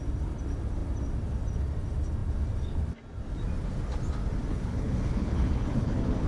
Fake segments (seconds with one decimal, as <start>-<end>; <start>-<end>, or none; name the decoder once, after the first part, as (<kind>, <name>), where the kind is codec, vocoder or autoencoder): 4.5-6.3 (codec, HILCodec)